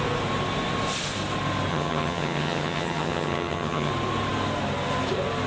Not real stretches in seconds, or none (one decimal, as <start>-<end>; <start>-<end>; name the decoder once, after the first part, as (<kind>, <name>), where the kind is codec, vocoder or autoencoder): 1.7-3.9 (vocoder, HiFi-GAN)